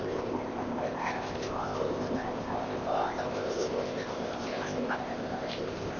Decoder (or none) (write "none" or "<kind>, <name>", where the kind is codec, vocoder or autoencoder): codec, ZipCodec